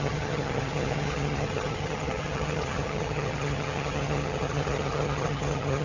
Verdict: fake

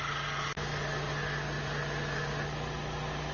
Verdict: real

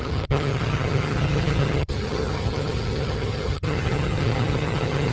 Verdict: fake